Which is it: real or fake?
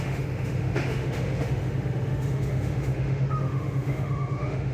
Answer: fake